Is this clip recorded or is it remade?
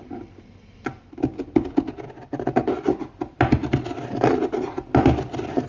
recorded